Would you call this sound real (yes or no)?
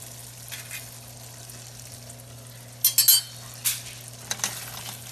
yes